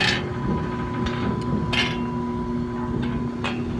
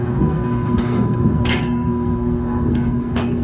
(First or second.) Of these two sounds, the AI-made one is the second